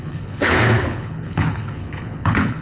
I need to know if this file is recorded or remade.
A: remade